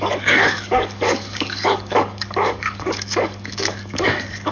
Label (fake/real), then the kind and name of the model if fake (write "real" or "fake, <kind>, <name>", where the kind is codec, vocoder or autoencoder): fake, codec, DAC